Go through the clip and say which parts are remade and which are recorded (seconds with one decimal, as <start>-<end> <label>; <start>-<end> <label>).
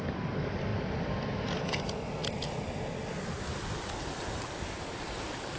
0.0-0.7 recorded; 0.7-1.4 remade; 1.4-5.6 recorded